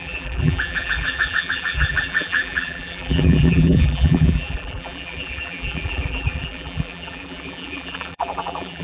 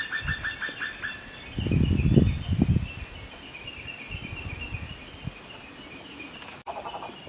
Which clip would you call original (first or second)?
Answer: second